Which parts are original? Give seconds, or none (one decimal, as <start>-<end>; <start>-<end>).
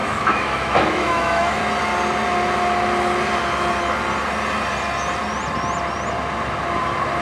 1.6-7.2